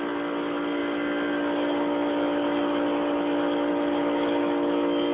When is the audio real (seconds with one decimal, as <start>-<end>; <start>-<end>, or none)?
0.0-5.1